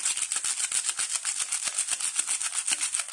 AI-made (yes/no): no